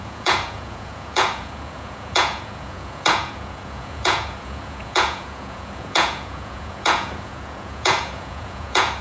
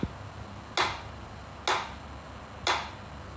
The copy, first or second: first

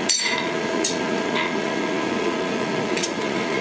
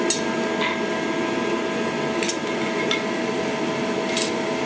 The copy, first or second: first